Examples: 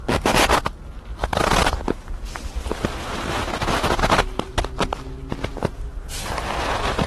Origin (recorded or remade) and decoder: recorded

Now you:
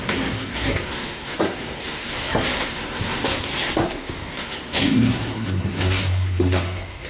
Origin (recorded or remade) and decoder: remade, codec, SNAC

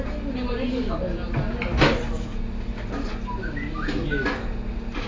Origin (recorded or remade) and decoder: recorded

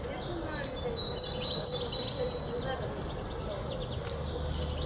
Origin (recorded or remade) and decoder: recorded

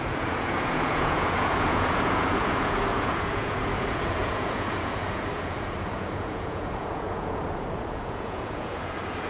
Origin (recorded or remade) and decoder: remade, vocoder, Vocos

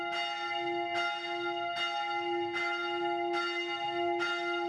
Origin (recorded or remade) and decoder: recorded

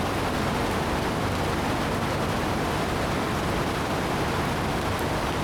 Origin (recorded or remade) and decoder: recorded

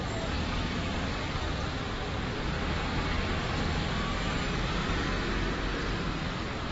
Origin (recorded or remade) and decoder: recorded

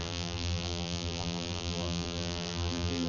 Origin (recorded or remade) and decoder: remade, vocoder, BigVGAN v2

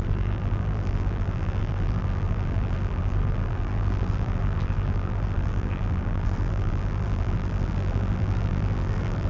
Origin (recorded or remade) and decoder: remade, vocoder, BigVGAN v2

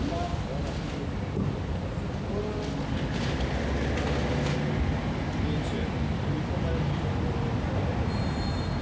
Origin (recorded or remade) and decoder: recorded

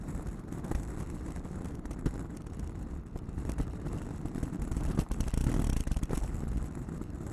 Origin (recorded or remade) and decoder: remade, vocoder, BigVGAN v2